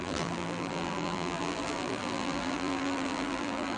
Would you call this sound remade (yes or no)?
yes